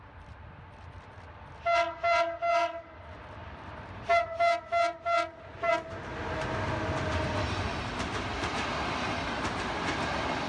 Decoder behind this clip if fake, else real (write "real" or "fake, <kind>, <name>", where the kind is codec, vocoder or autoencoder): real